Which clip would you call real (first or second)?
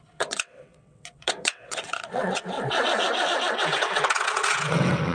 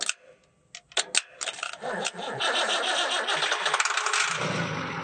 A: second